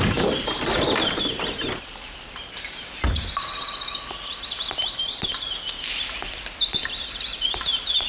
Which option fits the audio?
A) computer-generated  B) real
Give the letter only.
A